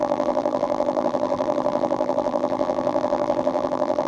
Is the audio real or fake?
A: fake